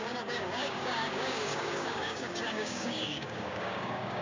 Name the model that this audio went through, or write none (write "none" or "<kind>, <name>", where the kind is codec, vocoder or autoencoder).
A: codec, DAC